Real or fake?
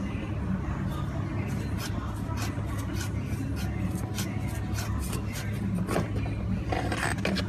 real